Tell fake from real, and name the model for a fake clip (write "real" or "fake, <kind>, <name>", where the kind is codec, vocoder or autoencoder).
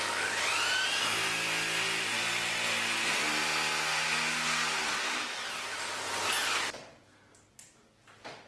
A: real